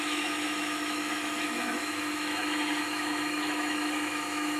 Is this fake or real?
fake